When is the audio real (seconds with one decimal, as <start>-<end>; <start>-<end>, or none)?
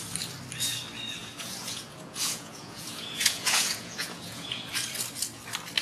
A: 0.0-1.2; 4.7-5.8